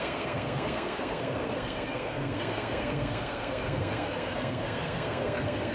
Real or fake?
fake